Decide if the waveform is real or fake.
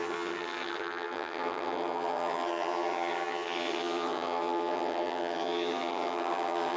fake